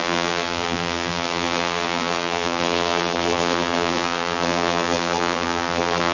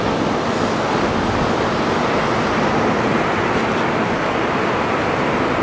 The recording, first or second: second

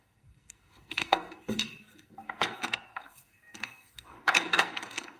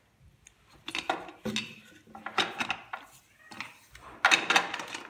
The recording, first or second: second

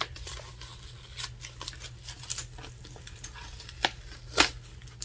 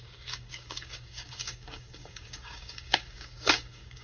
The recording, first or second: first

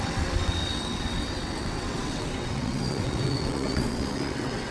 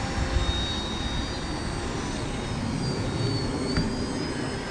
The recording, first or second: second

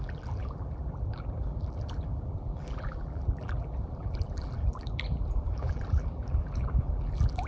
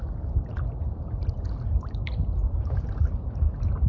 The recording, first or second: second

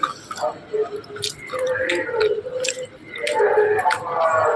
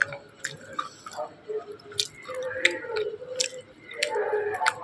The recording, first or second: first